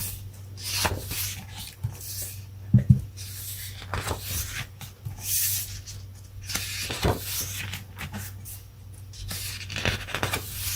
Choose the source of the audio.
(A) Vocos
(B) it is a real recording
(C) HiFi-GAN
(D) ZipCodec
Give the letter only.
B